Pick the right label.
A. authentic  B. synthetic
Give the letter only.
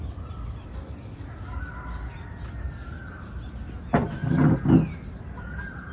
B